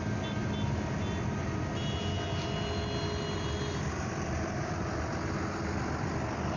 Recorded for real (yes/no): yes